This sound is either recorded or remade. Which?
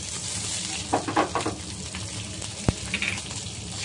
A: recorded